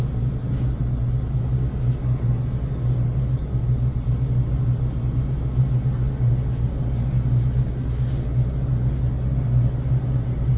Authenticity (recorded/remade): recorded